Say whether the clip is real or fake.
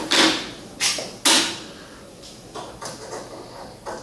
real